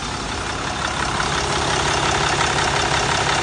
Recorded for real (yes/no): yes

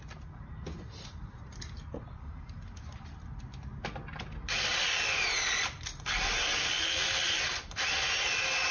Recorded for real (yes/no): yes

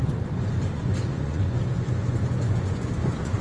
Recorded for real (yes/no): no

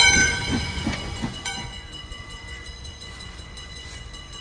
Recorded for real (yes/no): no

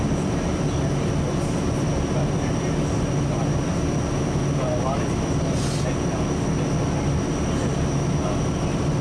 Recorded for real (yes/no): yes